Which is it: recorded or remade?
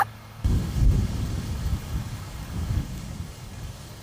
remade